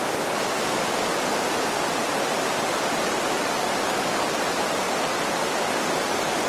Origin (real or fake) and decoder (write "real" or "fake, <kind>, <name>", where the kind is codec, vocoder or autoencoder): real